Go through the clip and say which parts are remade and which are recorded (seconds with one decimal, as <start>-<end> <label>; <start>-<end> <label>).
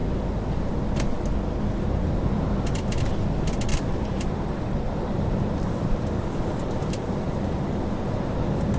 0.0-3.7 recorded; 3.7-7.8 remade; 7.8-8.8 recorded